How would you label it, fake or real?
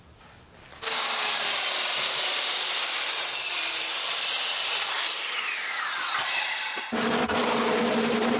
real